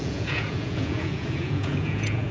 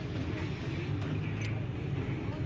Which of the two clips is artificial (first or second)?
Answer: first